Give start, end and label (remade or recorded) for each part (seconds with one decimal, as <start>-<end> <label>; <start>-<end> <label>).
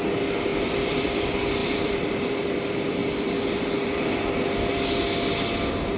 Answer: 0.0-0.5 recorded; 0.5-1.1 remade; 1.1-1.6 recorded; 1.6-2.3 remade; 2.3-3.0 recorded; 3.0-3.6 remade; 3.6-6.0 recorded